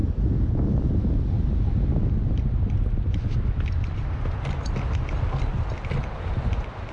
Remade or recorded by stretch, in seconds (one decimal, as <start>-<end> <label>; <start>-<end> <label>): 0.0-6.9 recorded